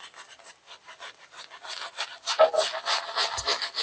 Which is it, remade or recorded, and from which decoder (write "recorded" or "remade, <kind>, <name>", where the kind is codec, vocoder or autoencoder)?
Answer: recorded